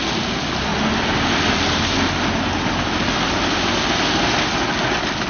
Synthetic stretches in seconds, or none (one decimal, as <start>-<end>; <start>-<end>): 0.7-3.9